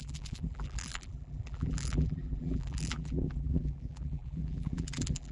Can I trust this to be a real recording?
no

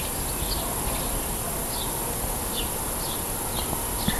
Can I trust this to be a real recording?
yes